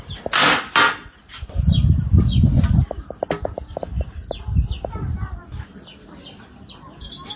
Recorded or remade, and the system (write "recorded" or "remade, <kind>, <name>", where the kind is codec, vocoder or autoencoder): recorded